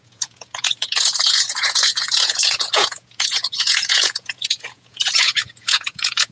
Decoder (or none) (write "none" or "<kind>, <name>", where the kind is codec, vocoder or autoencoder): vocoder, Vocos